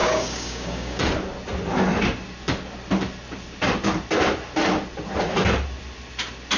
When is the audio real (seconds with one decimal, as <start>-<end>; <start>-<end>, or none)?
1.0-6.6